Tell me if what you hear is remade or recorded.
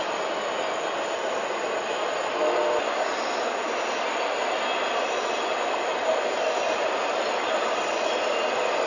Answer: recorded